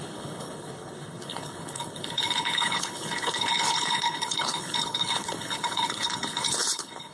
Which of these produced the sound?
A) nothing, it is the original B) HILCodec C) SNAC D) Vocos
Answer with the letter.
B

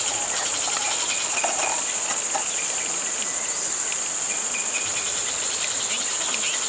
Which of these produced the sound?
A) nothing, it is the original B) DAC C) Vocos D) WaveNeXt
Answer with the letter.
A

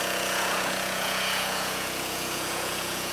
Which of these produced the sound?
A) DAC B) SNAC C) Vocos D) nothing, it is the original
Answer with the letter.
C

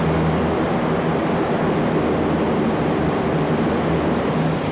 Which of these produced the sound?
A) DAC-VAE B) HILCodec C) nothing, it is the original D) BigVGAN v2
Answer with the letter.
C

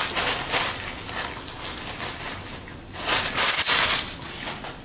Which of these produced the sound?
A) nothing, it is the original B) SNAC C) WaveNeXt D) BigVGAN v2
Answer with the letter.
A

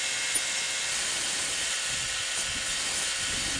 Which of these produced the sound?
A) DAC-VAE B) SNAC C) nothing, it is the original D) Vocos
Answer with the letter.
C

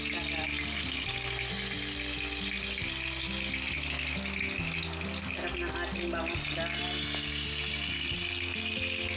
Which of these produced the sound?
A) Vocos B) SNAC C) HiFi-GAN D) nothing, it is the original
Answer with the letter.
D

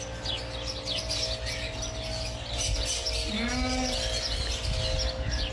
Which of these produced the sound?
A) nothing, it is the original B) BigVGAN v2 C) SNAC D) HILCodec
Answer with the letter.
A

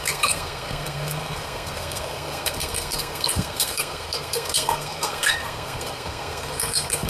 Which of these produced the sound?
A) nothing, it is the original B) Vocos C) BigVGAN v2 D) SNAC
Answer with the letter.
D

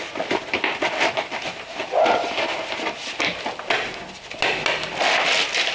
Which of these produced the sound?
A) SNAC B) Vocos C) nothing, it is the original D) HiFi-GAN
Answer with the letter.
C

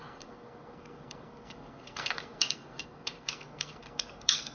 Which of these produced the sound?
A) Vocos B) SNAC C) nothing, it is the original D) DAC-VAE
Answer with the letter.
B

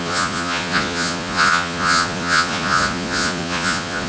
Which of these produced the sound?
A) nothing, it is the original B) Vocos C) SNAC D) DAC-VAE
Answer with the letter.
B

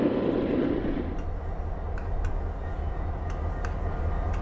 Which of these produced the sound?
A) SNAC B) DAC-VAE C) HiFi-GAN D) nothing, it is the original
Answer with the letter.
D